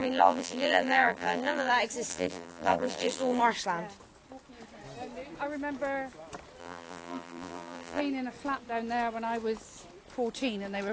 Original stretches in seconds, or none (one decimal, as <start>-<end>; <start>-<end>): 1.7-2.1; 3.4-6.6; 8.0-10.9